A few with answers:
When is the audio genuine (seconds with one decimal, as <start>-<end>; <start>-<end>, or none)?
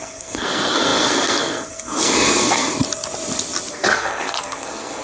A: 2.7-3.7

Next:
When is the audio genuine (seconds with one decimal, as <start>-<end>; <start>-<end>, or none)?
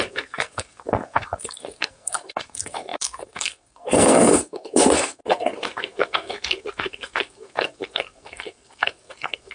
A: none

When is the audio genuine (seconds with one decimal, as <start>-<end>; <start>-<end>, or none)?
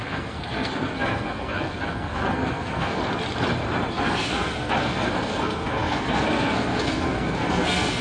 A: 3.0-3.9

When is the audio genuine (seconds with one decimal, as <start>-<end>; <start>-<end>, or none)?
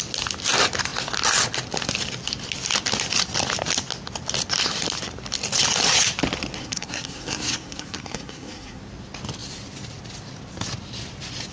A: 0.0-6.6; 8.8-11.5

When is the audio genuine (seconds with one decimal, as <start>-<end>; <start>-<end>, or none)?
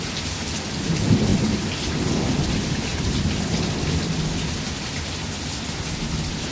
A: 0.0-6.5